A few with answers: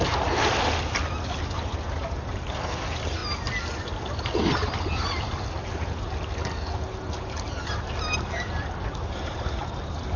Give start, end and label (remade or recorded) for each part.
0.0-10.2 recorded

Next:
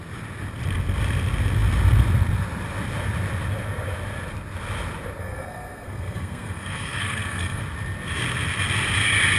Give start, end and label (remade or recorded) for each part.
0.0-5.2 recorded; 5.2-7.6 remade; 7.6-9.4 recorded

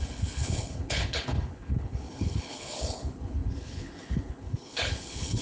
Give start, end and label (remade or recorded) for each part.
0.0-5.4 remade